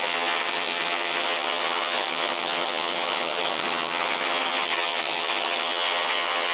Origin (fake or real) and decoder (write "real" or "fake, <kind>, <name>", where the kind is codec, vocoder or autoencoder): fake, vocoder, HiFi-GAN